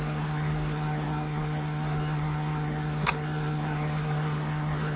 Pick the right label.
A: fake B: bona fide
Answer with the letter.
A